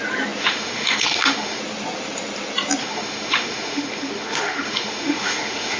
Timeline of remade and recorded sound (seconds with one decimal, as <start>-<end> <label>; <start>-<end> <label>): 0.0-0.4 recorded; 0.4-1.6 remade; 1.6-2.8 recorded; 2.8-5.8 remade